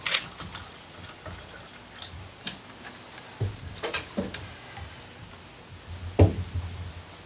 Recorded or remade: recorded